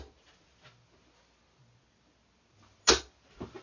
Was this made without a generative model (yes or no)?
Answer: yes